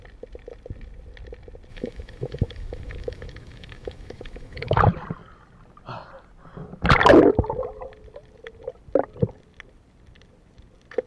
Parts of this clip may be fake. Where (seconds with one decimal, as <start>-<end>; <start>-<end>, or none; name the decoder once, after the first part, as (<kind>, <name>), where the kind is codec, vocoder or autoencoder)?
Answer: 1.7-4.8 (autoencoder, DAC-VAE)